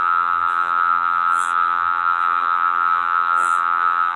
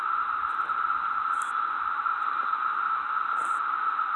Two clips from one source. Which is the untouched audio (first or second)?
second